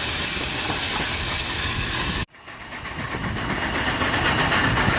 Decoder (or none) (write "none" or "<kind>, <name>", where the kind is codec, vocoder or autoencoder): none